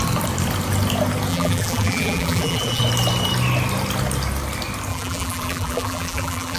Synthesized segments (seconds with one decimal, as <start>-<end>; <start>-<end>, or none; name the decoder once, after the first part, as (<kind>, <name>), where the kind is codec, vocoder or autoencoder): 1.3-2.8 (vocoder, BigVGAN v2); 4.9-6.6